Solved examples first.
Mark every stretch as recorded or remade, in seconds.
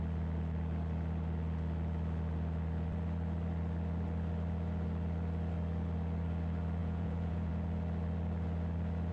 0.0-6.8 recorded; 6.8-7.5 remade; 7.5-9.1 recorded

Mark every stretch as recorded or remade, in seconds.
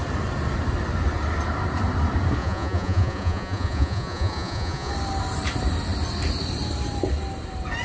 0.0-2.4 recorded; 2.4-4.9 remade; 4.9-7.8 recorded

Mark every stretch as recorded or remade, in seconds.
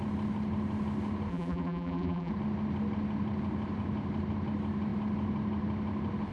0.0-1.3 recorded; 1.3-2.3 remade; 2.3-6.3 recorded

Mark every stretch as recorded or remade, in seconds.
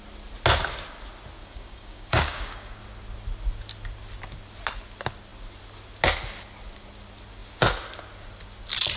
0.0-1.4 recorded; 1.4-2.8 remade; 2.8-9.0 recorded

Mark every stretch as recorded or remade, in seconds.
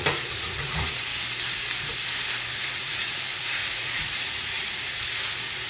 0.0-1.1 remade; 1.1-2.5 recorded; 2.5-5.7 remade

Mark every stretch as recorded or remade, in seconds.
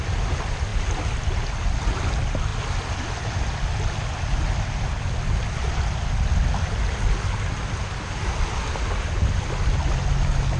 0.0-10.6 recorded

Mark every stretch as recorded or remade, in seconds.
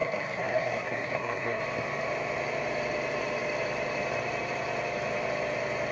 0.0-1.6 remade; 1.6-5.9 recorded